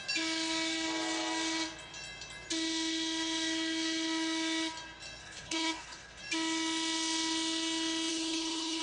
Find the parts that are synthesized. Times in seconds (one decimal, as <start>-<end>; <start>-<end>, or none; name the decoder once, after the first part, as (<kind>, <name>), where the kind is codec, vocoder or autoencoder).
5.2-6.2 (codec, HILCodec); 8.1-8.8